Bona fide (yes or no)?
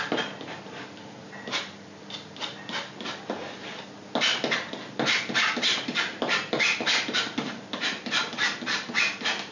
yes